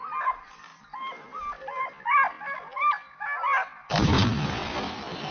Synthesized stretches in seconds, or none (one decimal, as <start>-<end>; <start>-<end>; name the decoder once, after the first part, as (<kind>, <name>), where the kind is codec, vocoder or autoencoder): 0.0-0.7 (vocoder, BigVGAN v2); 3.9-5.3

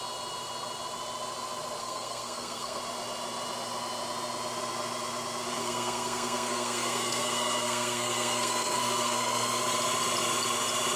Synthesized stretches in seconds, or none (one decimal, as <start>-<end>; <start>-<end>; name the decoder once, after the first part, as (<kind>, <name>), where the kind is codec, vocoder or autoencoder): 1.8-2.8 (codec, SNAC); 5.6-9.6

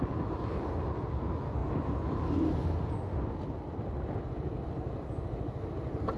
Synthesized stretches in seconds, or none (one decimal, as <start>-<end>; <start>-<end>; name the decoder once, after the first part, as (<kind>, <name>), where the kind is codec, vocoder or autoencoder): none

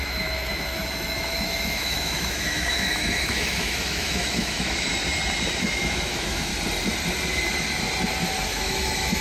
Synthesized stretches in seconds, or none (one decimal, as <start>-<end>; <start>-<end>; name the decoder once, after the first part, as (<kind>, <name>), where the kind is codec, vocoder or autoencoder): 0.0-4.9 (autoencoder, DAC-VAE); 5.6-6.5; 8.5-9.2

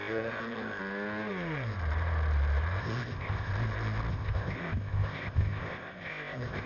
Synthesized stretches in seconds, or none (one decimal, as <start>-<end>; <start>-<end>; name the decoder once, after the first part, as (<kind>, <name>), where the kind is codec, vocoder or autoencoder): 0.0-0.8 (codec, ZipCodec); 2.8-3.5; 4.1-6.7